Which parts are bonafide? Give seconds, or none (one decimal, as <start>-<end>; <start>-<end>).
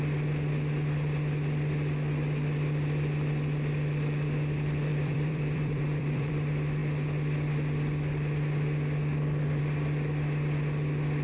0.0-4.9; 6.3-11.2